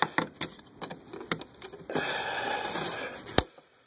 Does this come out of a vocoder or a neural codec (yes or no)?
no